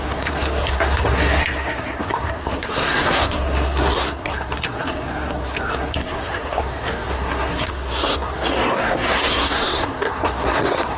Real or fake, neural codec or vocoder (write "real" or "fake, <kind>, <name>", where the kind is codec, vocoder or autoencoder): fake, codec, SNAC